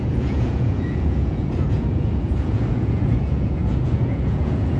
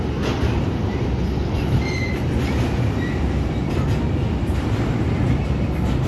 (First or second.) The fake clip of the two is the first